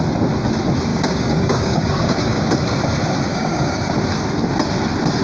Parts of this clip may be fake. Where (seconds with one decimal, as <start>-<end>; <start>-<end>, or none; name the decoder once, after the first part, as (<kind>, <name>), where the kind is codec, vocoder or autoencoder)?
0.9-2.4 (codec, DAC); 3.3-3.8